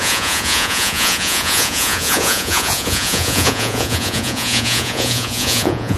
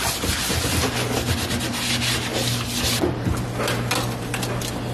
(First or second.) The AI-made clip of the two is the first